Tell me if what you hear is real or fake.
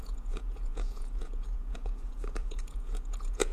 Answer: fake